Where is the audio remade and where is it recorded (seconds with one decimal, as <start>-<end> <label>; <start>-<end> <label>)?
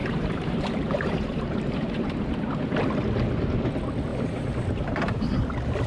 0.0-2.4 remade; 2.4-4.1 recorded; 4.1-5.2 remade; 5.2-5.9 recorded